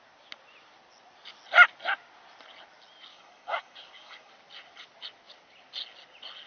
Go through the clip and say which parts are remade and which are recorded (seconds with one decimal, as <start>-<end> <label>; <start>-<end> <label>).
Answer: 0.0-3.1 recorded; 3.1-4.3 remade; 4.3-6.5 recorded